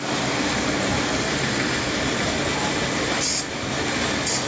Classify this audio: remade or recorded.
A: recorded